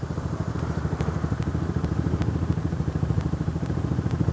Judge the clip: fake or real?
fake